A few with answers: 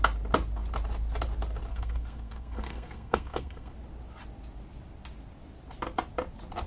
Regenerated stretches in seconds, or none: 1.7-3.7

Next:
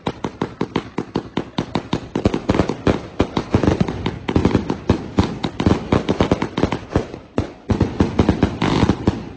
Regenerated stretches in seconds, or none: 7.0-7.9

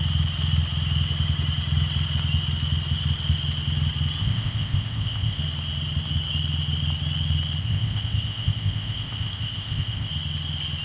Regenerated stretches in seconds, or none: 4.2-5.4; 7.6-10.1

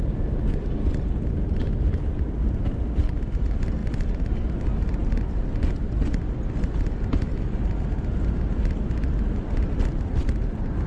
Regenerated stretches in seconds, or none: none

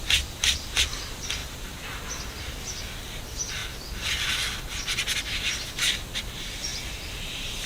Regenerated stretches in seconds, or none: 0.0-1.4; 2.3-3.6; 5.2-7.7

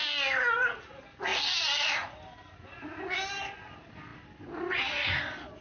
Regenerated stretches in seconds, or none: none